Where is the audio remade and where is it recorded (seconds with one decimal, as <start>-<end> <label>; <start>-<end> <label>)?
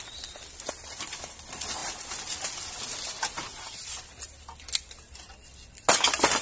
0.0-3.5 recorded; 3.5-4.0 remade; 4.0-6.4 recorded